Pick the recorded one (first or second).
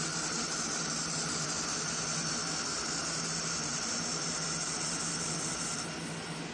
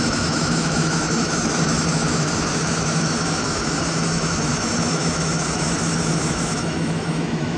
first